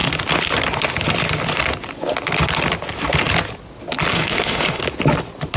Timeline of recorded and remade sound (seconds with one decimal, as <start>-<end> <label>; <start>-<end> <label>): 0.0-4.1 recorded; 4.1-4.8 remade; 4.8-5.6 recorded

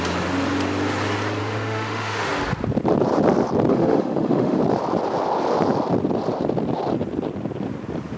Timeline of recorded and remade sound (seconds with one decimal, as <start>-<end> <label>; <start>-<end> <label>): 0.0-1.4 recorded; 1.4-2.3 remade; 2.3-3.7 recorded; 3.7-4.6 remade; 4.6-8.2 recorded

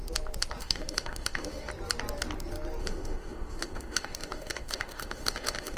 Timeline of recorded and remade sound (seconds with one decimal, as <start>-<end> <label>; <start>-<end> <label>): 0.0-0.6 recorded; 0.6-1.7 remade; 1.7-2.8 recorded; 2.8-5.8 remade

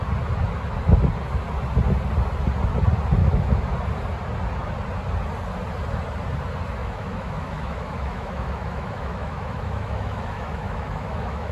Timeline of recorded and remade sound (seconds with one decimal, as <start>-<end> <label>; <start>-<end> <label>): 0.0-3.2 recorded; 3.2-3.7 remade; 3.7-6.8 recorded; 6.8-11.5 remade

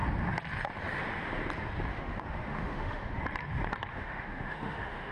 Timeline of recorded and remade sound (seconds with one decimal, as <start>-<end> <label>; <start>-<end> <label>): 0.0-1.9 recorded; 1.9-3.2 remade; 3.2-3.9 recorded; 3.9-5.1 remade

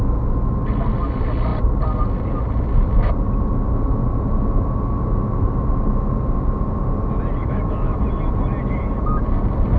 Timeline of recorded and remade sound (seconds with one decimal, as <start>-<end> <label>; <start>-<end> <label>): 0.0-7.4 recorded; 7.4-8.0 remade; 8.0-9.8 recorded

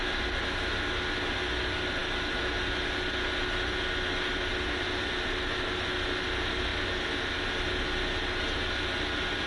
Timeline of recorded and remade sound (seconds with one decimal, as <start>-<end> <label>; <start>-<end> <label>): 0.0-9.5 recorded